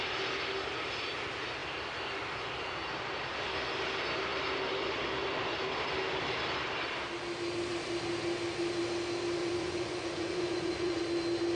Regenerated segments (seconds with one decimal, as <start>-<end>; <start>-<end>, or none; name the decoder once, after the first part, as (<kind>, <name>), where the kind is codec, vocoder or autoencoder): 9.4-11.0 (vocoder, Vocos)